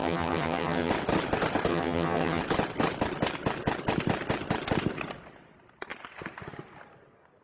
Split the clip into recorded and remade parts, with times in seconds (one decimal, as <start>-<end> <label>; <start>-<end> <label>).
0.0-0.9 remade; 0.9-1.7 recorded; 1.7-2.4 remade; 2.4-7.4 recorded

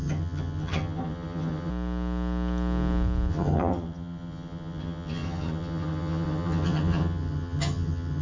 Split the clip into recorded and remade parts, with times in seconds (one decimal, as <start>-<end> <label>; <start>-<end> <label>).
0.0-1.7 remade; 1.7-3.3 recorded; 3.3-8.2 remade

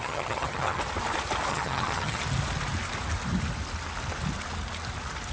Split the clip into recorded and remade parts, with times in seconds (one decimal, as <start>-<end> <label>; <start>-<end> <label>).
0.0-0.8 remade; 0.8-1.5 recorded; 1.5-2.2 remade; 2.2-5.3 recorded

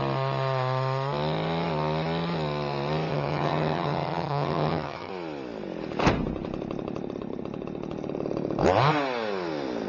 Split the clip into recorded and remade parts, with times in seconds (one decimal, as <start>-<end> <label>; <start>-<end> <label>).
0.0-3.1 recorded; 3.1-5.1 remade; 5.1-9.9 recorded

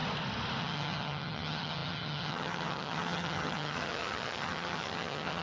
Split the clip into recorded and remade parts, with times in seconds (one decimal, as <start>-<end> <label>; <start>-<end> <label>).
0.0-0.6 recorded; 0.6-5.4 remade